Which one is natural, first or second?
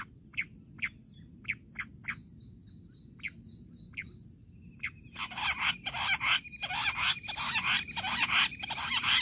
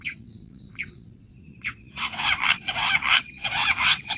first